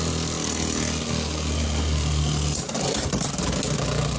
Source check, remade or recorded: recorded